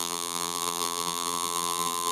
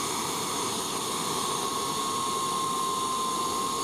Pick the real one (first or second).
second